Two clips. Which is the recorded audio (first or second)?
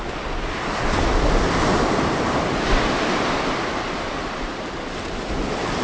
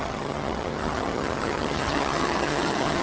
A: first